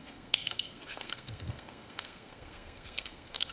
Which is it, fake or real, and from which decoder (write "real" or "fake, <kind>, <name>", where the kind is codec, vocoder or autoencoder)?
fake, codec, SNAC